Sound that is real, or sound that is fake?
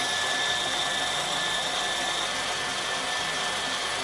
real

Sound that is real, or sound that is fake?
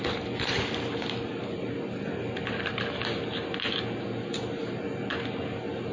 fake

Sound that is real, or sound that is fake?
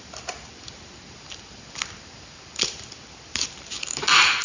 real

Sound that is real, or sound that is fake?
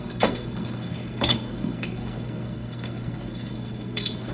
fake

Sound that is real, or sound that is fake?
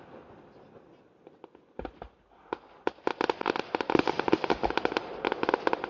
real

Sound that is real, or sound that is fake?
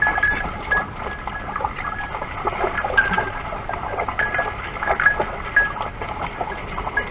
real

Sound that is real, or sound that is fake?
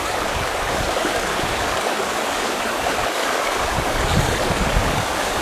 fake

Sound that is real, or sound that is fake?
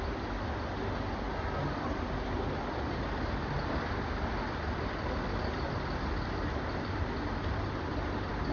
real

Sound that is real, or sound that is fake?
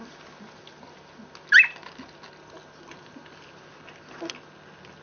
real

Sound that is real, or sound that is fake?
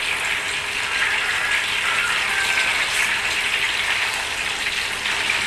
real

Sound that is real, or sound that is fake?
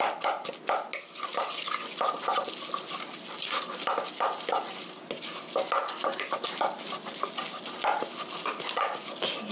real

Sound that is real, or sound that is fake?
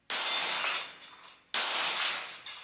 real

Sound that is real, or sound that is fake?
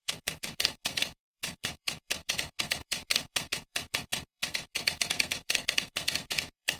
fake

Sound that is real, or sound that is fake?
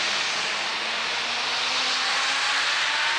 real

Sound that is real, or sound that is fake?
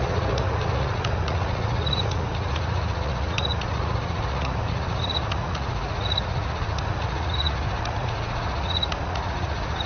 fake